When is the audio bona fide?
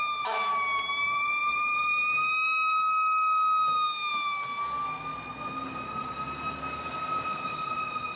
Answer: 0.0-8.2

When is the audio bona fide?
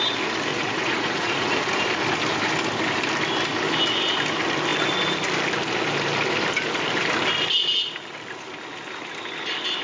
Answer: 0.0-0.5; 1.6-9.8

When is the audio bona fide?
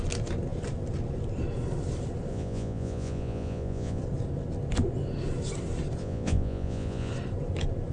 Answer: 0.0-2.3; 4.0-6.0; 7.1-7.9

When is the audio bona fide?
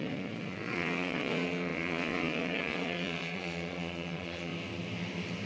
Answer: 4.5-5.5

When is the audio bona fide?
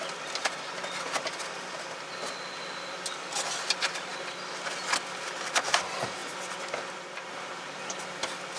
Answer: 0.0-8.6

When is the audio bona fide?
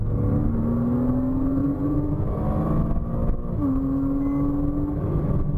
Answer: 0.0-1.6; 2.2-5.6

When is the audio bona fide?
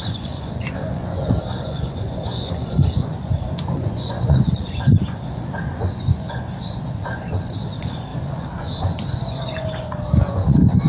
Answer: none